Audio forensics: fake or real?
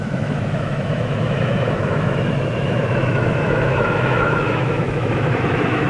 fake